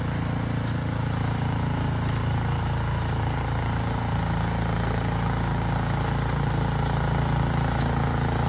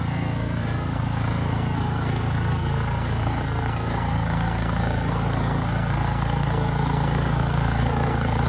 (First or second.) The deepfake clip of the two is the second